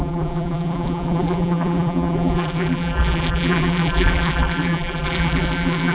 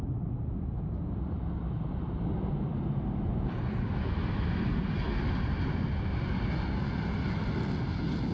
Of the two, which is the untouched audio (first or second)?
second